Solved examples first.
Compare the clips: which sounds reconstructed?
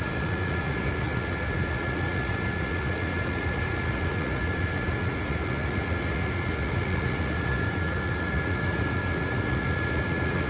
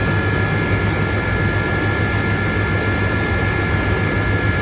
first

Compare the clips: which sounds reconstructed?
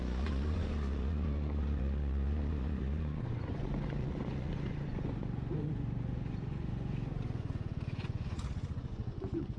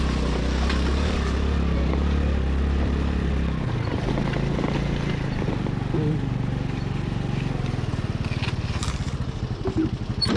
first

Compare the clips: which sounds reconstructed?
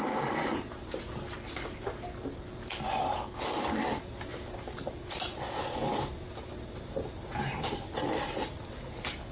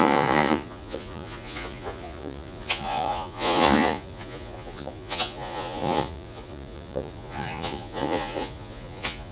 second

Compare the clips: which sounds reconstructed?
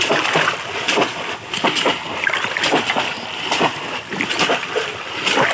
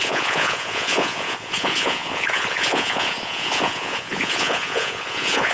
second